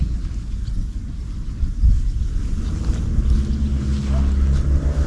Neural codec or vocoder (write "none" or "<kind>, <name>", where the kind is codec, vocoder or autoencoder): none